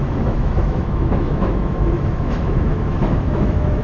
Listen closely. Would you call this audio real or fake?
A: fake